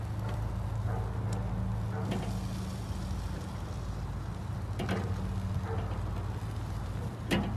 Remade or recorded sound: recorded